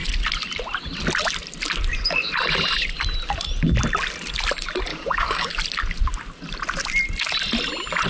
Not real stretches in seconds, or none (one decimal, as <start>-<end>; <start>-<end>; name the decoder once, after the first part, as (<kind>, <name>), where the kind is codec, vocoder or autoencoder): 4.9-5.5 (codec, DAC)

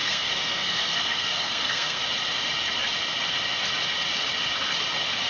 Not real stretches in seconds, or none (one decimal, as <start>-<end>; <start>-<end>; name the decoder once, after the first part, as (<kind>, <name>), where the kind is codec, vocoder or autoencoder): 0.0-2.0 (codec, SNAC)

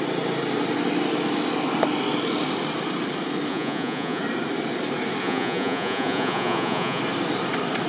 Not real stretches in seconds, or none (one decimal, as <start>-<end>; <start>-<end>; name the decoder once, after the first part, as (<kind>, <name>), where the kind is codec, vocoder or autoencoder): 3.5-4.2 (vocoder, Vocos); 5.2-7.0

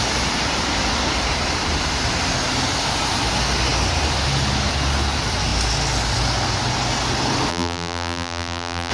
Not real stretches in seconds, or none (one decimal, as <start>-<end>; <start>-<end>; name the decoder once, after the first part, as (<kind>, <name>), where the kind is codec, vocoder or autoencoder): 7.5-8.9 (vocoder, BigVGAN v2)

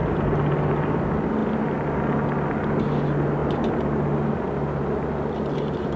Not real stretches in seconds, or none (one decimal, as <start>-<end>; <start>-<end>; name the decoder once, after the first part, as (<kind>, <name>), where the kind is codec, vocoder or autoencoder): none

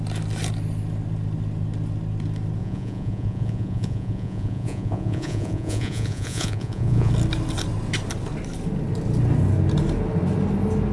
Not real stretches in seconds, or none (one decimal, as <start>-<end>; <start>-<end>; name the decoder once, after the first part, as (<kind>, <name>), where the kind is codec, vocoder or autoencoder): 2.6-7.1 (vocoder, Vocos)

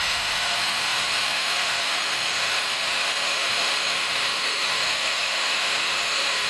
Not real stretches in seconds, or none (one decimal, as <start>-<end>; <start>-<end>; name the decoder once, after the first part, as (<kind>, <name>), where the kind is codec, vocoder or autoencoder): 0.0-6.5 (autoencoder, DAC-VAE)